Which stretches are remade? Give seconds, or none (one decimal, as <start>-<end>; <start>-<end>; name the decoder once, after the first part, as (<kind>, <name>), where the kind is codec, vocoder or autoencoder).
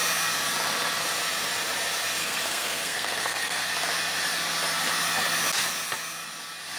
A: 2.2-3.7 (codec, SNAC)